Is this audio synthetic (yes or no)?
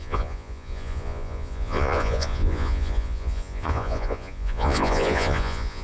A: yes